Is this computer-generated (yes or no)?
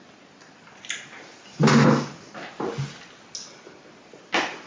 no